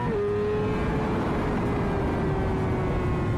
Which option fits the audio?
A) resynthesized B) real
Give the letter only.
B